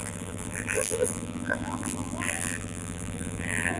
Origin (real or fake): fake